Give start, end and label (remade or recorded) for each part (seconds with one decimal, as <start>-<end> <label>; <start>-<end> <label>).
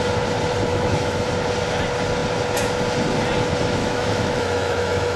0.0-0.7 recorded; 0.7-1.3 remade; 1.3-3.8 recorded; 3.8-5.2 remade